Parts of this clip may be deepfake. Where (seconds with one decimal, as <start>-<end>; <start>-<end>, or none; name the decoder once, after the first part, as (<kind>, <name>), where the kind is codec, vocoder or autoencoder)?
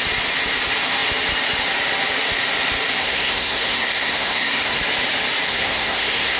3.0-4.8 (codec, SNAC); 5.5-6.4